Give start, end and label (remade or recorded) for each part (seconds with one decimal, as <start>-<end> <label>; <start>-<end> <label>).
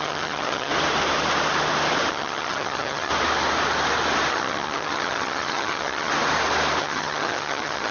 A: 0.0-0.7 remade; 0.7-2.1 recorded; 2.1-3.1 remade; 3.1-4.3 recorded; 4.3-6.1 remade; 6.1-6.8 recorded; 6.8-7.9 remade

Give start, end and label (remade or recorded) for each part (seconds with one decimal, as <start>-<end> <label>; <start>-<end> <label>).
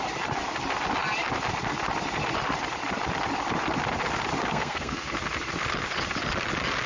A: 0.0-4.5 recorded; 4.5-5.1 remade; 5.1-6.9 recorded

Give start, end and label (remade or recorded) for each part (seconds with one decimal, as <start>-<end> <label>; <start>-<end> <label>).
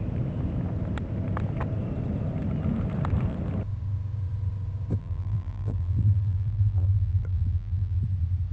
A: 0.0-5.0 recorded; 5.0-8.0 remade; 8.0-8.5 recorded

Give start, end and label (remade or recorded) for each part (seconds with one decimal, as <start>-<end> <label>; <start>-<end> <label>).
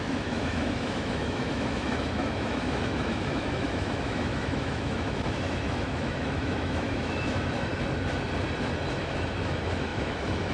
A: 0.0-7.7 remade; 7.7-9.0 recorded; 9.0-10.5 remade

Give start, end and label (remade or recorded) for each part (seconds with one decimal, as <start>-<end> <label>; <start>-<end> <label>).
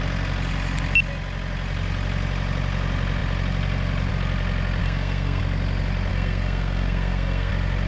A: 0.0-4.8 recorded; 4.8-5.4 remade; 5.4-6.1 recorded; 6.1-7.5 remade; 7.5-7.9 recorded